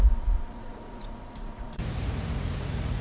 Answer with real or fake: fake